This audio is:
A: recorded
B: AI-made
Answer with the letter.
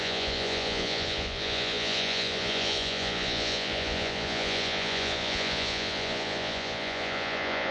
B